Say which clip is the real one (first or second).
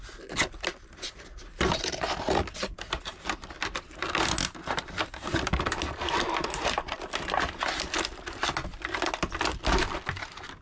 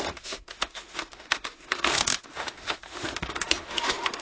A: first